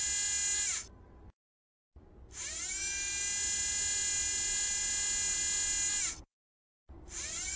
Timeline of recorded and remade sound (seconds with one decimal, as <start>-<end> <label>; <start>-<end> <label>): 0.0-0.9 recorded; 0.9-1.5 remade; 1.5-6.1 recorded; 6.1-7.6 remade